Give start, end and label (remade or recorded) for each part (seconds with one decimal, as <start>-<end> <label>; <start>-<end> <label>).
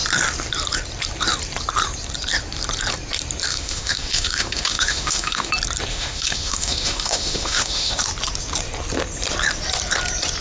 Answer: 0.0-3.5 recorded; 3.5-5.5 remade; 5.5-5.9 recorded; 5.9-8.0 remade; 8.0-10.4 recorded